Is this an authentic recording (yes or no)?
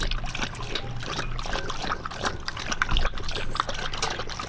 yes